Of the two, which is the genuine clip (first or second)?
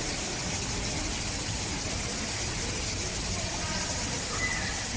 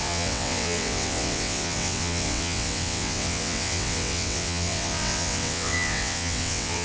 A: first